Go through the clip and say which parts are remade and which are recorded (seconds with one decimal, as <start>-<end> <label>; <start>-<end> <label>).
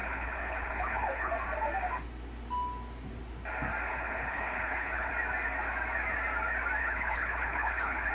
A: 0.0-1.3 remade; 1.3-3.9 recorded; 3.9-5.1 remade; 5.1-6.8 recorded; 6.8-8.1 remade